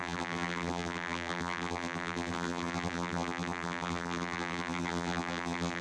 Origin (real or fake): fake